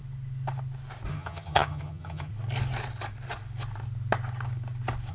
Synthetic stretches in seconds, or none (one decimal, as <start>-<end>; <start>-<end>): 1.1-2.3